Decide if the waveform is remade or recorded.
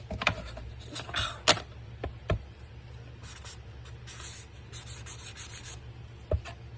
recorded